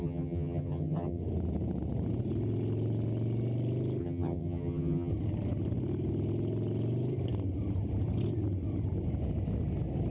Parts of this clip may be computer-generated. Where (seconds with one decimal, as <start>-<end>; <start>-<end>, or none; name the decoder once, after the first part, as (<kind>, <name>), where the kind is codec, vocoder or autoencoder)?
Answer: 0.0-1.2 (vocoder, HiFi-GAN); 4.0-5.1